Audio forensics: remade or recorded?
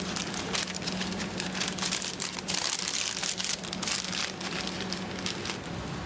recorded